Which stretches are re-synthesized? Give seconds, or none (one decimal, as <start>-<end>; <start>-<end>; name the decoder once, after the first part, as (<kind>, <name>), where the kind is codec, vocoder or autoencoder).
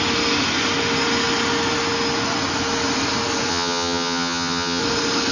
3.5-4.8 (vocoder, HiFi-GAN)